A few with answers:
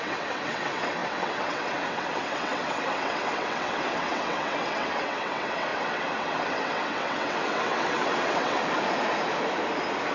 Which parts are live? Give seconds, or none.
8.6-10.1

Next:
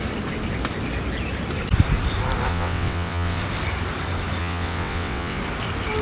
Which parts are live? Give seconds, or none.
0.0-2.5; 3.4-4.4; 5.4-6.0

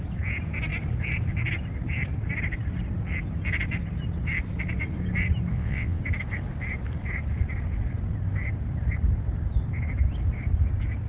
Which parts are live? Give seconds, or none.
0.0-5.5; 6.0-11.1

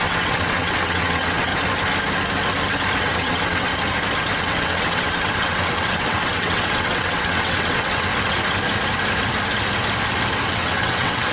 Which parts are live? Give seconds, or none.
1.5-3.0; 3.7-4.4; 8.1-10.5

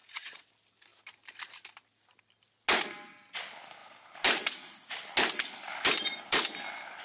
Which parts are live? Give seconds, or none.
0.5-7.0

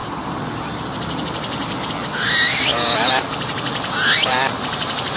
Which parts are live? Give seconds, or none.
0.0-5.2